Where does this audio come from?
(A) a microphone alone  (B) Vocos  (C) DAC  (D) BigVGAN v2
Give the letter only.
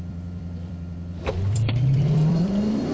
D